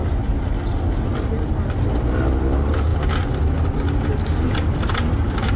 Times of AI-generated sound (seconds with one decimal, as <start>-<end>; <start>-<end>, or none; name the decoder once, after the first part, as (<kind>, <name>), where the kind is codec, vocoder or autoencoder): none